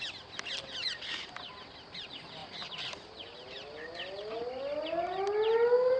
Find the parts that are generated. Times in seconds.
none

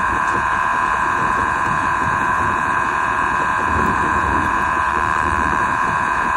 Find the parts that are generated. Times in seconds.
0.0-4.9 (vocoder, Vocos); 5.6-6.4

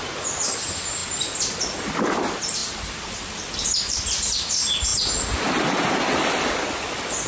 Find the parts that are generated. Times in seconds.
none

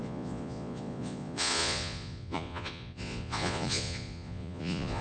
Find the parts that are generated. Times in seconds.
0.0-5.0 (vocoder, Vocos)

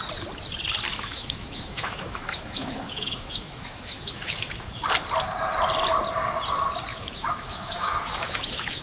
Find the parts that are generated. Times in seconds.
0.9-4.8 (autoencoder, DAC-VAE); 6.9-8.8